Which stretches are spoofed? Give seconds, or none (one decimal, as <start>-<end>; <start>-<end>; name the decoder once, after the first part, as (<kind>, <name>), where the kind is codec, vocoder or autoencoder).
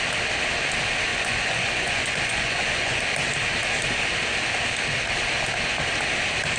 1.1-3.0 (vocoder, Vocos)